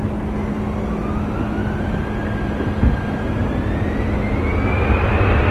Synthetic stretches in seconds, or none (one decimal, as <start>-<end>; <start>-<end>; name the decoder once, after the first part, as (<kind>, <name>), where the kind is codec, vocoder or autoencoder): none